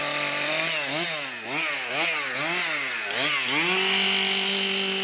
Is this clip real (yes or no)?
yes